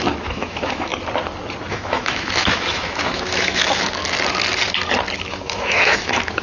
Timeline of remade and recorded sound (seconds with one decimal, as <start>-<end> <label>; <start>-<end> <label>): 0.0-0.9 remade; 0.9-1.7 recorded; 1.7-4.0 remade; 4.0-5.2 recorded; 5.2-6.4 remade